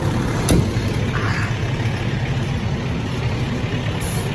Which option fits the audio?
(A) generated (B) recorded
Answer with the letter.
B